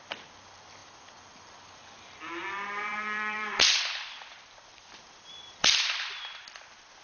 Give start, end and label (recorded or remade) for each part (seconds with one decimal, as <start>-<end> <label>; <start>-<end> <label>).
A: 0.0-2.9 recorded; 2.9-6.2 remade; 6.2-7.0 recorded